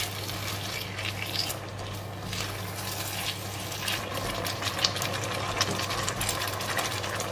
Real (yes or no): yes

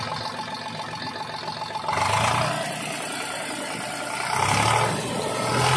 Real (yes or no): yes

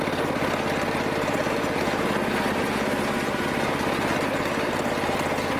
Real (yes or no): yes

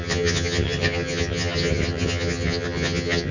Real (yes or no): no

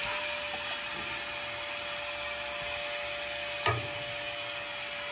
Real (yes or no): yes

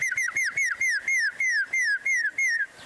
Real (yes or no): yes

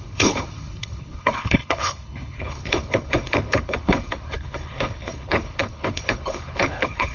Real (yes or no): no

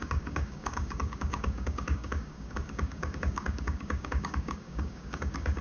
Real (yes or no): no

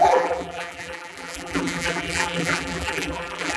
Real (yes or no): no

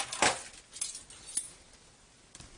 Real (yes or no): yes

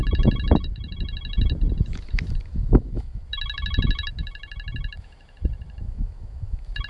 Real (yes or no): no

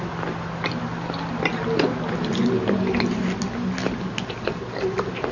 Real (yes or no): yes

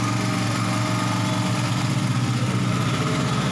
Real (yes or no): yes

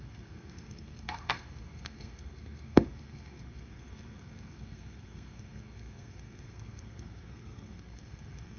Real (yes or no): no